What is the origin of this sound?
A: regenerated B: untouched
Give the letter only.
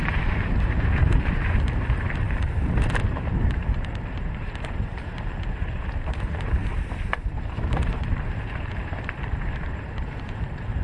A